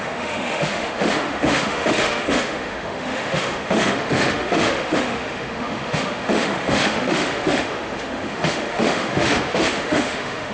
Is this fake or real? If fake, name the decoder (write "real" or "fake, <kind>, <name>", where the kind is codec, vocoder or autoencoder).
fake, autoencoder, DAC-VAE